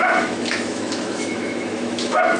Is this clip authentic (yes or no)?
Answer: no